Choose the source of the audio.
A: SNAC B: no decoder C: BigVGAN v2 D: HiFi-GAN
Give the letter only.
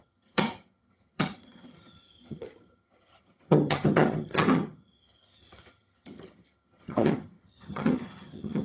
D